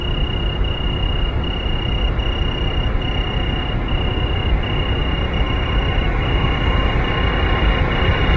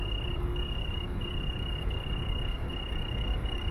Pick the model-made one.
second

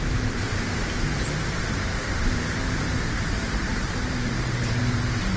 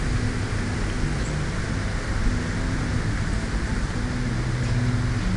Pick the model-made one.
first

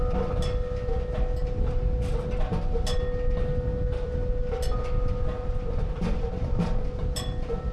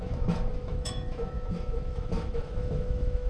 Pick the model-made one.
second